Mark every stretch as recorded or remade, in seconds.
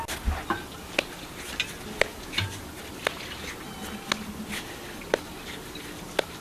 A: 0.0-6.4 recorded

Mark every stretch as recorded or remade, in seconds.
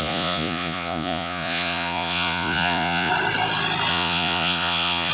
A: 0.0-3.1 remade; 3.1-3.9 recorded; 3.9-5.1 remade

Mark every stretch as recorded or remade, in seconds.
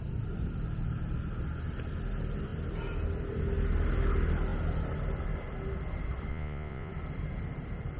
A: 0.0-6.3 recorded; 6.3-6.9 remade; 6.9-8.0 recorded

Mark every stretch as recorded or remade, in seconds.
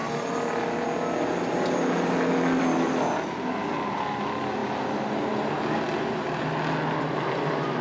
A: 0.0-7.8 recorded